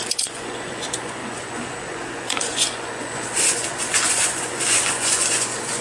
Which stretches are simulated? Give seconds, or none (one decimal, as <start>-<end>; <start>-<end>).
0.0-5.8